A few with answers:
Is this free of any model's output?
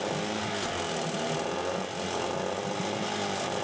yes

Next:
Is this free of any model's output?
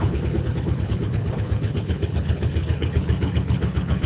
no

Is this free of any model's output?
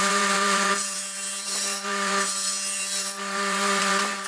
no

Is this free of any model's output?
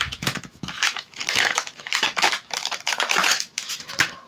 no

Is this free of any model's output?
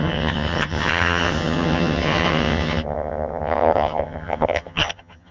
no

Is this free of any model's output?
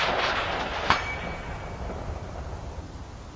yes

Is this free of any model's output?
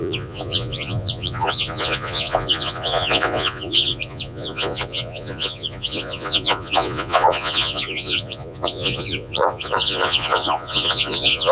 no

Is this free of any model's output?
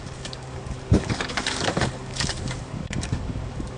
no